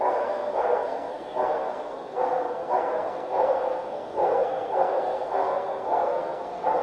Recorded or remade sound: remade